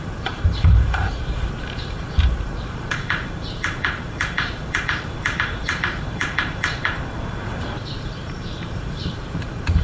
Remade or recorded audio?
remade